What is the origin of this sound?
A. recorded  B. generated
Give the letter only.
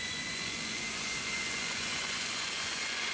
B